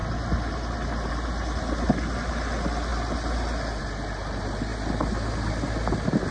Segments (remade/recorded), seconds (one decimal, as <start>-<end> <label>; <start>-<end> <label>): 0.0-6.3 recorded